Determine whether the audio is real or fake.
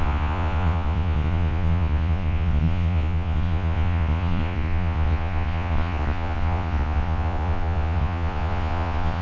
fake